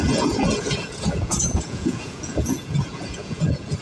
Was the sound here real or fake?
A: fake